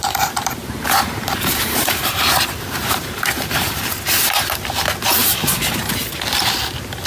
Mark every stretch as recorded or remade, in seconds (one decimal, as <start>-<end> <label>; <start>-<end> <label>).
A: 0.0-4.1 remade; 4.1-5.2 recorded; 5.2-5.9 remade; 5.9-7.1 recorded